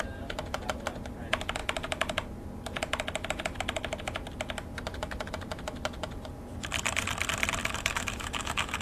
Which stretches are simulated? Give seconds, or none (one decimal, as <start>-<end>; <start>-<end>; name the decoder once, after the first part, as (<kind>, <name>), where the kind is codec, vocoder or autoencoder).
7.6-8.8 (autoencoder, DAC-VAE)